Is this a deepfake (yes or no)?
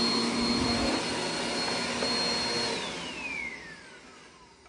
no